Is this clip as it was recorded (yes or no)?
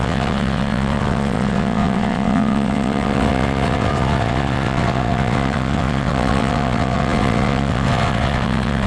no